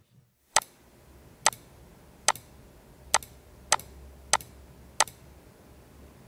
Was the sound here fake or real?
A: real